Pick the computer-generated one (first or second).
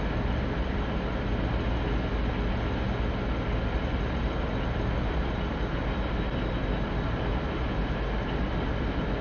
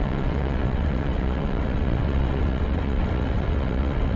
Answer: second